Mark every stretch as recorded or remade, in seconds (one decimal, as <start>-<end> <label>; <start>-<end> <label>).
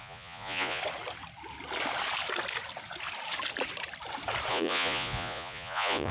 0.0-0.8 remade; 0.8-4.5 recorded; 4.5-6.1 remade